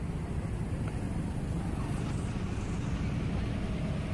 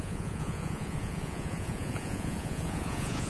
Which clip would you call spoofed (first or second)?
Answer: second